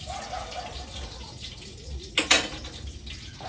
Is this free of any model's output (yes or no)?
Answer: yes